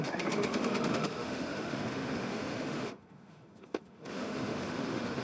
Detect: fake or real fake